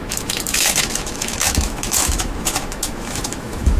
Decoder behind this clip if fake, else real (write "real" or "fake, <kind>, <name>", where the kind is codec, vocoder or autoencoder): fake, autoencoder, DAC-VAE